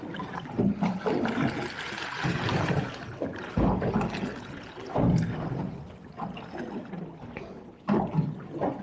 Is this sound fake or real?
real